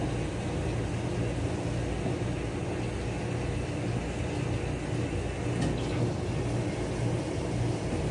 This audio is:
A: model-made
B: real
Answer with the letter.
B